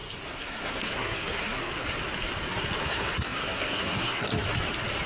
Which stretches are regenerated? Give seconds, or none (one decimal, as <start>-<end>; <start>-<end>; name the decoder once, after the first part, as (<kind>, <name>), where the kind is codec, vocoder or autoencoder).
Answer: 0.0-1.7 (codec, SNAC); 2.8-4.3